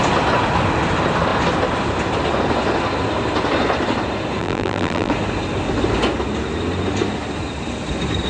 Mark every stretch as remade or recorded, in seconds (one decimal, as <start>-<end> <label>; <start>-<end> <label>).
0.0-4.4 recorded; 4.4-5.1 remade; 5.1-8.3 recorded